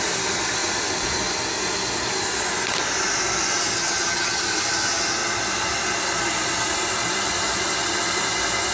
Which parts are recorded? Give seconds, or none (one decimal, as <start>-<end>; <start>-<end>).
0.0-3.8; 4.4-8.7